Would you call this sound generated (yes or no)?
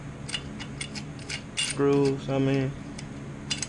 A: no